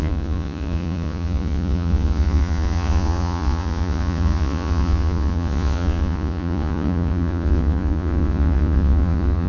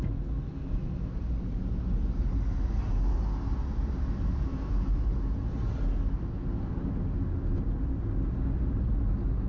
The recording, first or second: second